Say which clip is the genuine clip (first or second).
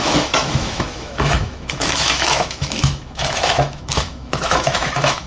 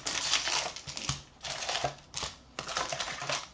second